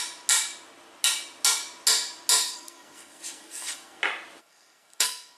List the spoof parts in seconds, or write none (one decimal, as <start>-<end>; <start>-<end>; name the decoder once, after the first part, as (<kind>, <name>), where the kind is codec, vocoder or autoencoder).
2.4-4.0 (codec, SNAC); 4.4-5.4